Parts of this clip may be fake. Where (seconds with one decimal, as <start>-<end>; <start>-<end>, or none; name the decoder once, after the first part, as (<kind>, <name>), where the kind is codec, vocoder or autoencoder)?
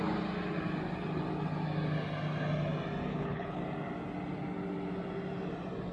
3.1-3.6 (codec, HILCodec)